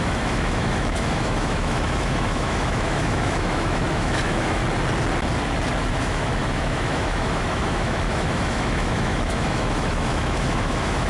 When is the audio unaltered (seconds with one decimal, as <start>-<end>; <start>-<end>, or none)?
4.6-5.9